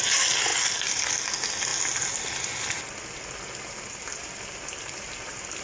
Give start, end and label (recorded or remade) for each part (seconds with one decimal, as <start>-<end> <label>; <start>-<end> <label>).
0.0-5.6 recorded